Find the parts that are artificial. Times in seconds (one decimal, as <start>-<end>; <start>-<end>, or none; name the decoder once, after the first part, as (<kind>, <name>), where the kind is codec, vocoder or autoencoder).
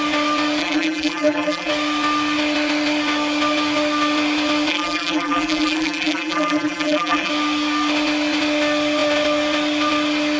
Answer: 0.6-1.7 (vocoder, BigVGAN v2); 4.7-7.3